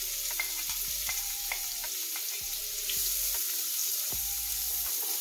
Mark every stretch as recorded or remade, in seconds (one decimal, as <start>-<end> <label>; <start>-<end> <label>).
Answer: 0.0-1.0 recorded; 1.0-2.5 remade; 2.5-5.2 recorded